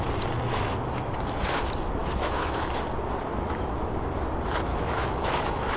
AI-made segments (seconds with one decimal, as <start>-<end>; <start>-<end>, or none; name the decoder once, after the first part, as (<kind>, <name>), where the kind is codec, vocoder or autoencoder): 2.0-2.8 (autoencoder, DAC-VAE); 4.7-5.8